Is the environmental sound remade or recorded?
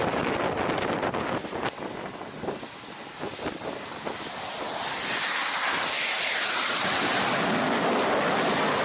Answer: recorded